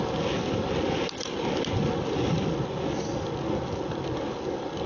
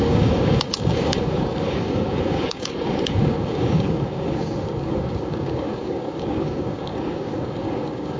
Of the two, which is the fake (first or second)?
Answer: second